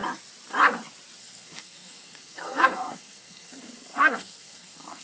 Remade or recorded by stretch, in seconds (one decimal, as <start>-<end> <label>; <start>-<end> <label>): 0.0-1.2 recorded; 1.2-5.0 remade